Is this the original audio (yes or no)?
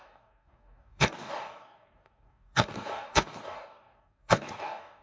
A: no